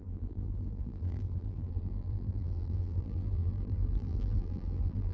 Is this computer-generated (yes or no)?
yes